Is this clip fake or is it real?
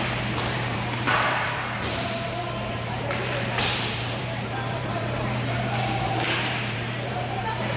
fake